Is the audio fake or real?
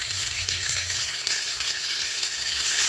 fake